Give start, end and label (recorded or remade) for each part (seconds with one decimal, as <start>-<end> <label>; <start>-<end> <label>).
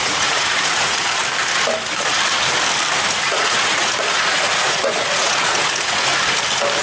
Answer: 0.0-1.2 remade; 1.2-3.1 recorded; 3.1-6.1 remade; 6.1-6.8 recorded